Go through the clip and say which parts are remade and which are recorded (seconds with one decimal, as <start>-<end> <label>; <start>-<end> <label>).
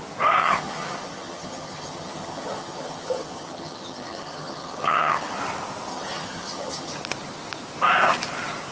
0.0-0.4 recorded; 0.4-5.4 remade; 5.4-5.9 recorded; 5.9-6.9 remade; 6.9-8.7 recorded